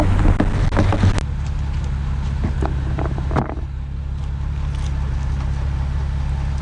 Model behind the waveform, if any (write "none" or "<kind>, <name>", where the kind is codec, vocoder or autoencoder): none